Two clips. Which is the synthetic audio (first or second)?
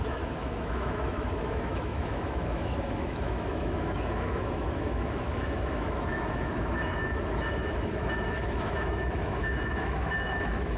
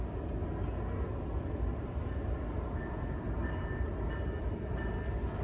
first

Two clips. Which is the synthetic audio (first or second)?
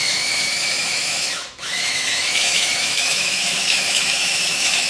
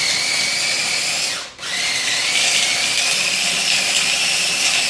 first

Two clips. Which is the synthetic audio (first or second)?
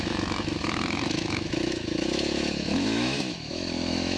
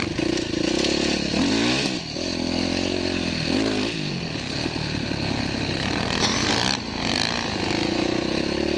first